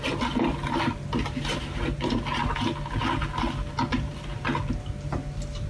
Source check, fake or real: real